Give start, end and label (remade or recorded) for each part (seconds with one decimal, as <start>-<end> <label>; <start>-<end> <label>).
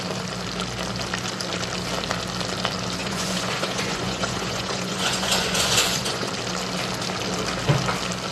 0.0-3.0 recorded; 3.0-6.3 remade; 6.3-8.3 recorded